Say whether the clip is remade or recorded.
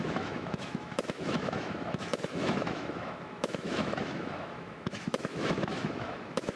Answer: remade